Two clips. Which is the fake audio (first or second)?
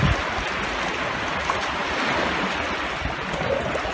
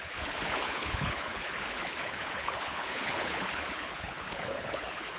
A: second